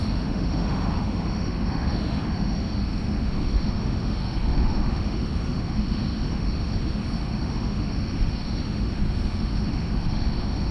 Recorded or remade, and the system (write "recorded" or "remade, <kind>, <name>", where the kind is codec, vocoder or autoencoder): remade, autoencoder, DAC-VAE